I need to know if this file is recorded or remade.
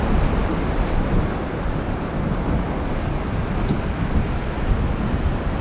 recorded